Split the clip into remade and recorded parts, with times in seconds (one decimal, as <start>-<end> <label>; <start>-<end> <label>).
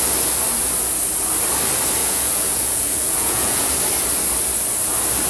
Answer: 0.0-2.0 recorded; 2.0-3.7 remade; 3.7-5.3 recorded